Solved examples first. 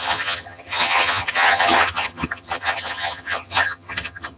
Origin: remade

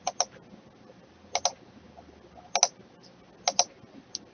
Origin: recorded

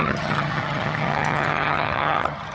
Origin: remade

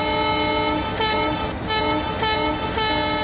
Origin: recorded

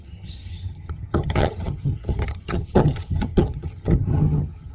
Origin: remade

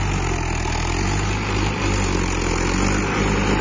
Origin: recorded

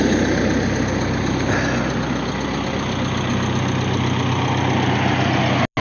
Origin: recorded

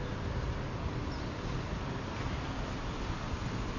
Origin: recorded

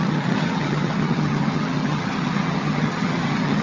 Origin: remade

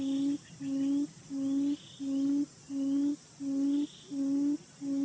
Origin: recorded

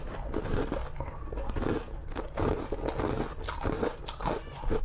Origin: recorded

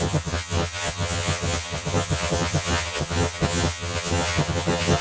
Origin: remade